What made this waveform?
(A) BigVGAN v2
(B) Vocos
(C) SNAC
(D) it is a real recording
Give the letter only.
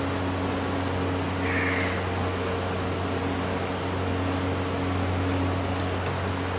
D